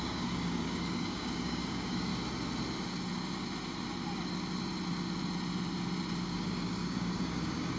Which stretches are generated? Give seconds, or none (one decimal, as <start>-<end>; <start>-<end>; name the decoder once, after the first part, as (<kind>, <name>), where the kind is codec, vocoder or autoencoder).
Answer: 0.0-2.1 (codec, DAC); 6.2-7.8